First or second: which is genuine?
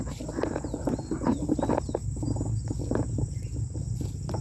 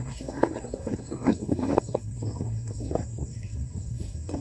first